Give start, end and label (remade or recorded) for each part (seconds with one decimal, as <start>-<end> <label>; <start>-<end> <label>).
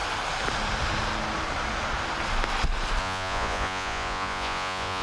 0.0-3.0 recorded; 3.0-5.0 remade